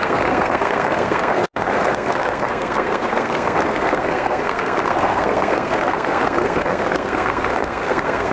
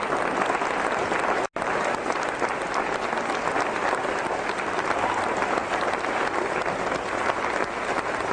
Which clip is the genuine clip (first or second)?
second